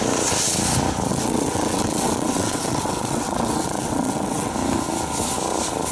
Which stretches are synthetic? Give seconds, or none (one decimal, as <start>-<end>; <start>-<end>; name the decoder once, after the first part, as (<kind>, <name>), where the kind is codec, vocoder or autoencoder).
1.1-4.5 (vocoder, WaveNeXt)